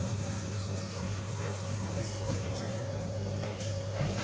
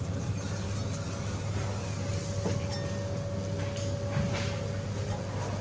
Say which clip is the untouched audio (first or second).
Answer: second